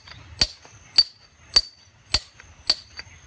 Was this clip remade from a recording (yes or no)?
no